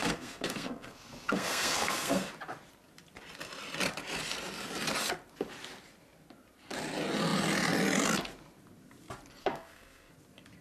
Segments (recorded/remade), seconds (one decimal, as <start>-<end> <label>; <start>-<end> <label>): 0.0-2.3 remade; 2.3-9.4 recorded; 9.4-10.1 remade; 10.1-10.6 recorded

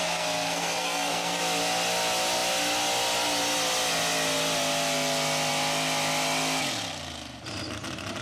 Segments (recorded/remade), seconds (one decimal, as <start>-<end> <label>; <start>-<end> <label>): 0.0-1.4 remade; 1.4-8.2 recorded

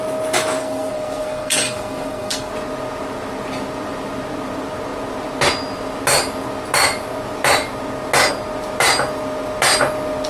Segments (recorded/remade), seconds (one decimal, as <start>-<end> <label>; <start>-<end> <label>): 0.0-0.6 recorded; 0.6-2.5 remade; 2.5-10.3 recorded

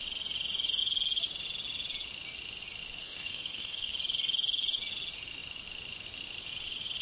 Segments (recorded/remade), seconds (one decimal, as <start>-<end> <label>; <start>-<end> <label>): 0.0-3.0 recorded; 3.0-3.9 remade; 3.9-7.0 recorded

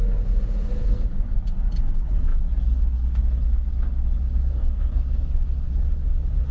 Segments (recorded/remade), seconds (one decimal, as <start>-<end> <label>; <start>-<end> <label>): 0.0-0.8 recorded; 0.8-1.4 remade; 1.4-4.5 recorded; 4.5-5.7 remade; 5.7-6.5 recorded

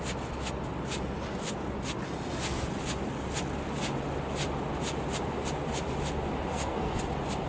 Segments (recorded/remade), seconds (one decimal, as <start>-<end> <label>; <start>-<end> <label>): 0.0-6.5 recorded; 6.5-7.0 remade; 7.0-7.5 recorded

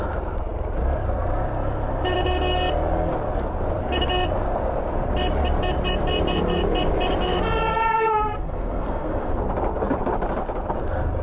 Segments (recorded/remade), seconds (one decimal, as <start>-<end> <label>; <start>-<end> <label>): 0.0-7.7 recorded; 7.7-9.3 remade; 9.3-11.2 recorded

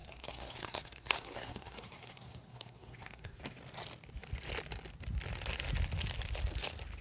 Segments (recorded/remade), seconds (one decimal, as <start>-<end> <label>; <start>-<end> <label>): 0.0-3.4 remade; 3.4-7.0 recorded